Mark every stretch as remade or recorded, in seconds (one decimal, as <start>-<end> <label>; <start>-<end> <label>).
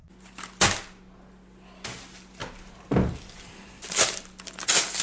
0.0-2.4 recorded; 2.4-4.2 remade; 4.2-5.0 recorded